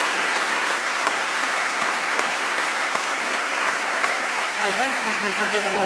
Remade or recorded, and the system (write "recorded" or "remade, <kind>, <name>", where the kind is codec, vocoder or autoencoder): remade, codec, SNAC